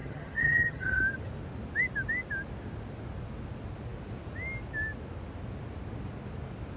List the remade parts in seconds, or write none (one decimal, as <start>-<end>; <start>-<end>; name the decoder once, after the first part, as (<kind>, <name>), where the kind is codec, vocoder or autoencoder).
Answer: 0.0-1.0 (vocoder, HiFi-GAN)